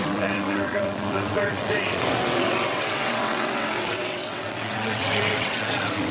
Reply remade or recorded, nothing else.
remade